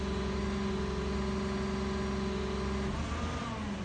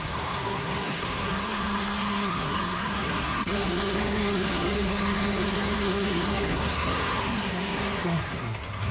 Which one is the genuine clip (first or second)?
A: first